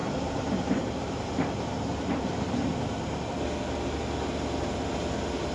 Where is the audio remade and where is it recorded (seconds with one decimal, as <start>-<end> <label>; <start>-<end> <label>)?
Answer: 0.0-3.3 remade; 3.3-5.5 recorded